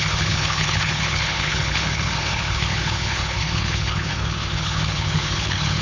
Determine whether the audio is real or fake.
fake